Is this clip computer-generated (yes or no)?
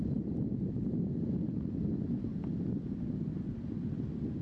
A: no